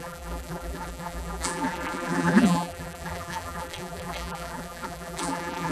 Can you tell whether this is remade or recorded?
remade